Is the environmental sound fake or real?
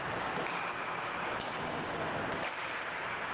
real